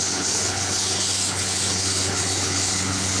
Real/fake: fake